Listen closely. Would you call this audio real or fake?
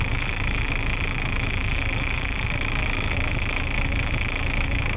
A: fake